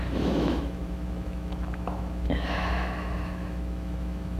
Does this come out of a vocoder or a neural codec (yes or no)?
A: yes